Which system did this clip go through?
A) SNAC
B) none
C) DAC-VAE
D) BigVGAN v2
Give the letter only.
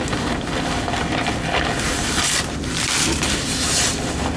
B